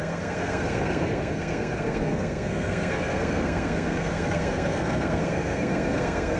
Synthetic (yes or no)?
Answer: yes